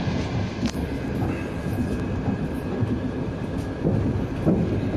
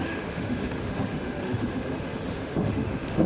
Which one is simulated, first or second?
second